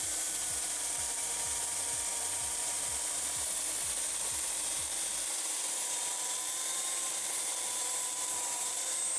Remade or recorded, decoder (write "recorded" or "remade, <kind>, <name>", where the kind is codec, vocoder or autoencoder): remade, vocoder, BigVGAN v2